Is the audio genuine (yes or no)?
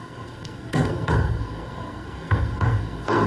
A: no